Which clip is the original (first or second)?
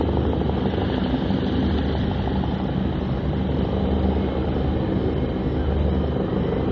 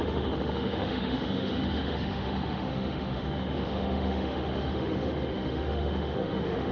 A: first